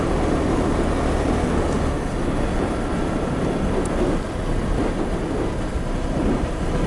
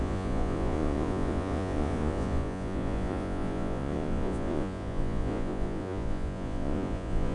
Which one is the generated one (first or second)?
second